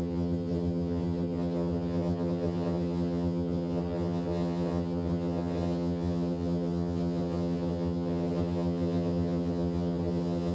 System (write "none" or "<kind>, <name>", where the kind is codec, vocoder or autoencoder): vocoder, HiFi-GAN